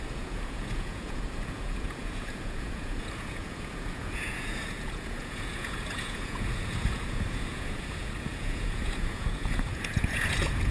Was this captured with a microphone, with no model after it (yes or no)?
no